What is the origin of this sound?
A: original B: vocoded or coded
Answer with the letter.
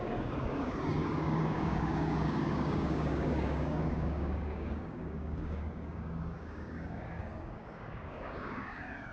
B